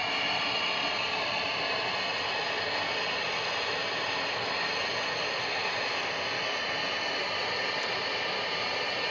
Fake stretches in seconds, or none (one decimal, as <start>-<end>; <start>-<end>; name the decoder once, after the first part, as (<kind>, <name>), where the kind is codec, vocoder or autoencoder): none